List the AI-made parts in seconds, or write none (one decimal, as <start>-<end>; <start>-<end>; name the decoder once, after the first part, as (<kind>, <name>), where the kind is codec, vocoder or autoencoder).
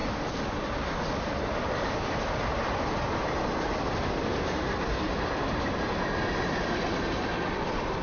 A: 1.6-8.0 (vocoder, BigVGAN v2)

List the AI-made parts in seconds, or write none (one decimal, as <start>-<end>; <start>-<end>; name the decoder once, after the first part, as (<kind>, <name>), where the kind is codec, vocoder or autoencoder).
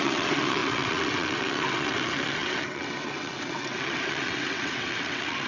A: 0.0-5.5 (vocoder, WaveNeXt)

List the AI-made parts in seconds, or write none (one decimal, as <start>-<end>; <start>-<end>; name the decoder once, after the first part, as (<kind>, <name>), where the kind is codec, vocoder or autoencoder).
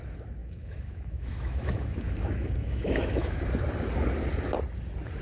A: 0.4-3.5 (autoencoder, DAC-VAE)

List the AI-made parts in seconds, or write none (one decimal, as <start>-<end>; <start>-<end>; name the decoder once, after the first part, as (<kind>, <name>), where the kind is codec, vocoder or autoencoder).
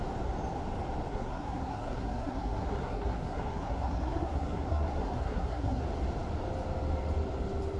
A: 1.1-5.8 (codec, SNAC)